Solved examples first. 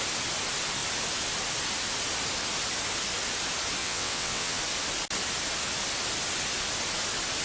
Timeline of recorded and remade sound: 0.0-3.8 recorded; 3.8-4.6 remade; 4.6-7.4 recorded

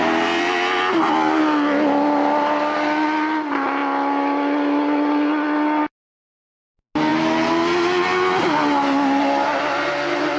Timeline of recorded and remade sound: 0.0-10.4 recorded

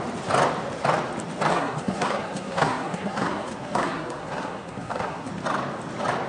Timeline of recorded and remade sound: 0.0-1.5 recorded; 1.5-5.3 remade; 5.3-6.3 recorded

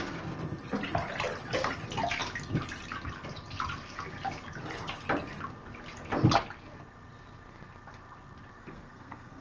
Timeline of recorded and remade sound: 0.0-8.6 recorded; 8.6-9.4 remade

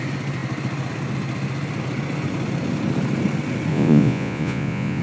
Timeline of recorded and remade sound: 0.0-3.7 recorded; 3.7-5.0 remade

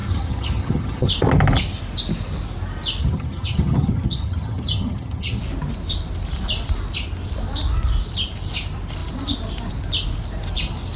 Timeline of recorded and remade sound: 0.0-1.1 remade; 1.1-3.0 recorded; 3.0-5.4 remade; 5.4-11.0 recorded